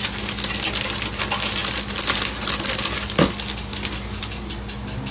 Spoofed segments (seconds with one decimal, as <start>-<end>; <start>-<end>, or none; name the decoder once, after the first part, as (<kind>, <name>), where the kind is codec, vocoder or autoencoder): none